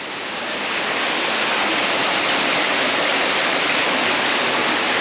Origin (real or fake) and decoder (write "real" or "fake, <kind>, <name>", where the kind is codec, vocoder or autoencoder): real